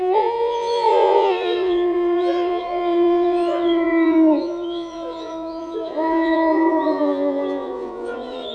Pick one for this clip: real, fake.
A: fake